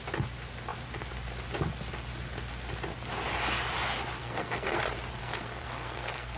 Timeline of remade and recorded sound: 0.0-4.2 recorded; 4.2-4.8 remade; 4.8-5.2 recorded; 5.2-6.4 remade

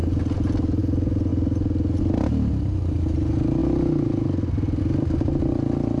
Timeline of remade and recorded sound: 0.0-6.0 recorded

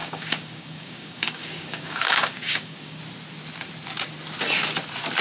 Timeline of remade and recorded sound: 0.0-3.0 remade; 3.0-5.2 recorded

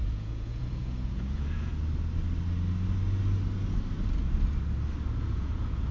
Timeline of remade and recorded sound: 0.0-1.7 remade; 1.7-5.2 recorded; 5.2-5.9 remade

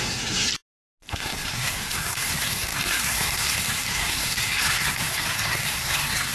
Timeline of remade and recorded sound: 0.0-0.5 remade; 0.5-1.1 recorded; 1.1-6.3 remade

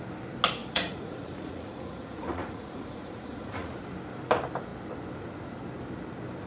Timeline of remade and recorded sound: 0.0-0.6 recorded; 0.6-3.7 remade; 3.7-6.5 recorded

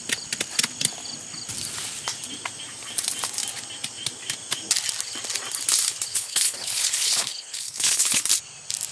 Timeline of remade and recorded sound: 0.0-6.1 recorded; 6.1-8.2 remade; 8.2-8.9 recorded